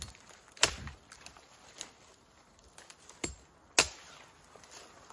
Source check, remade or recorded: recorded